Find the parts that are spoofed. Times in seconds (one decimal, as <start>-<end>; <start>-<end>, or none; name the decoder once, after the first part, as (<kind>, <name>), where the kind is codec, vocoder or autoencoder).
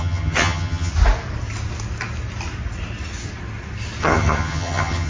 0.0-0.9 (vocoder, HiFi-GAN); 4.0-5.1